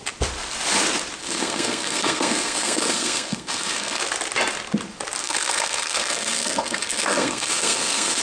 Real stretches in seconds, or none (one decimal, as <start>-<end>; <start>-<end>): 0.0-1.2; 4.0-5.2